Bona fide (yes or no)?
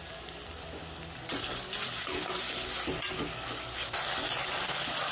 yes